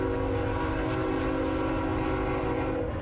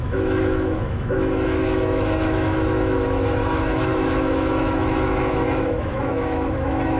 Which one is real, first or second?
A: first